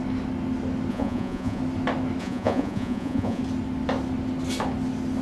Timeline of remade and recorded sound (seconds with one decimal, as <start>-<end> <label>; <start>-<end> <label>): 0.0-0.9 recorded; 0.9-1.6 remade; 1.6-2.2 recorded; 2.2-3.4 remade; 3.4-5.2 recorded